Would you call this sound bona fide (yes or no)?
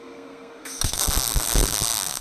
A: no